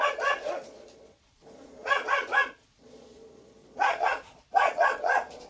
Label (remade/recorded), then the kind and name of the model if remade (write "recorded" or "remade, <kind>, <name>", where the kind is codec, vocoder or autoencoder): remade, vocoder, Vocos